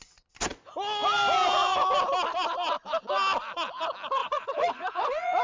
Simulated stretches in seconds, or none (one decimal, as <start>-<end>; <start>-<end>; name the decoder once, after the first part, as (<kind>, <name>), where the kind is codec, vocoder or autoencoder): 4.2-5.4 (vocoder, Vocos)